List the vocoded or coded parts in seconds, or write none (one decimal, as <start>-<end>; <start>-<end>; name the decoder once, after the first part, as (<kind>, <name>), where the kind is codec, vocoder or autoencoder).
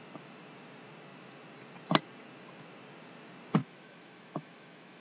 3.6-5.0 (autoencoder, DAC-VAE)